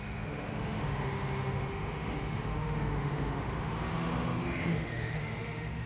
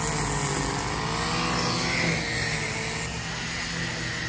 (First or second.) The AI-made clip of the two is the first